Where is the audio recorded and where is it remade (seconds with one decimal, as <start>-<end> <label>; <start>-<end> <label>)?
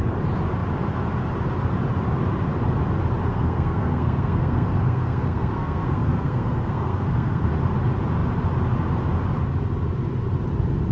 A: 0.0-3.3 recorded; 3.3-7.5 remade; 7.5-10.9 recorded